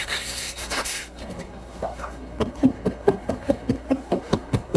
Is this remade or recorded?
remade